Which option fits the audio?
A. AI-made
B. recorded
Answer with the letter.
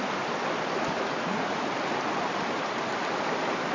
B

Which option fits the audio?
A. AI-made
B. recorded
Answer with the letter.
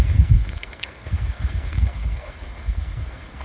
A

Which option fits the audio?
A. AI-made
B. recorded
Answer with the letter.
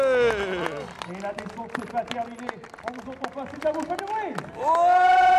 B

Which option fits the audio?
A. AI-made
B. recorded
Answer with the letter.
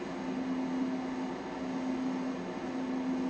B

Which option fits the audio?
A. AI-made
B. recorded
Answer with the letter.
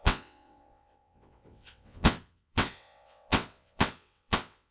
A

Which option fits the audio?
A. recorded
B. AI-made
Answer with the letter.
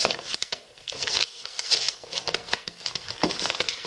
B